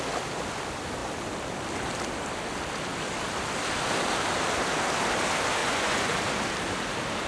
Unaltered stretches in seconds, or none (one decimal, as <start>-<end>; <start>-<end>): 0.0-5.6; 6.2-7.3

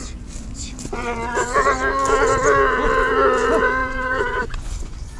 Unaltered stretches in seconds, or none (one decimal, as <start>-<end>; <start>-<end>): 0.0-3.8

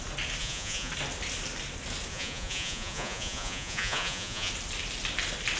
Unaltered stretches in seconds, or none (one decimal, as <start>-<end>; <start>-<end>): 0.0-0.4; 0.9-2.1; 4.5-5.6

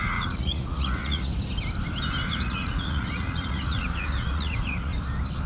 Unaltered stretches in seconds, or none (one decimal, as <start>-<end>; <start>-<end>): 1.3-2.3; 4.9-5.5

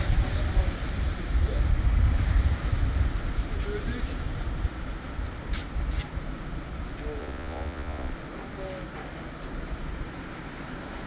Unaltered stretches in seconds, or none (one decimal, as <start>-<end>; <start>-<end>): 0.0-7.2; 8.1-11.1

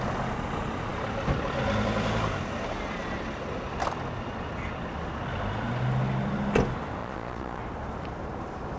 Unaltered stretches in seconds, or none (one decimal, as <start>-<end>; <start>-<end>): 0.0-7.0; 7.6-8.8